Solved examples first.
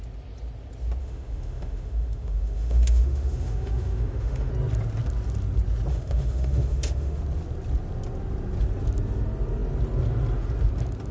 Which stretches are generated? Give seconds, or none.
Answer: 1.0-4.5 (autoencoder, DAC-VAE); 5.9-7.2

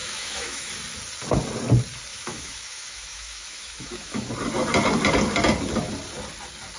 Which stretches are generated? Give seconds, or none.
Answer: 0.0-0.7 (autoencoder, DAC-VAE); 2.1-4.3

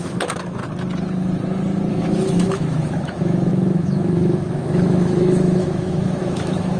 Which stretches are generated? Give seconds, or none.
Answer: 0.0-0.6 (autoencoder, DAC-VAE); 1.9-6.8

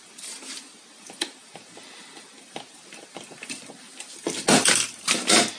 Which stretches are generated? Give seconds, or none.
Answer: none

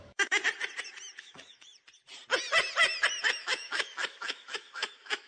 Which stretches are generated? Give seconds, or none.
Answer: 0.0-0.4 (autoencoder, DAC-VAE); 1.2-1.7; 3.4-5.3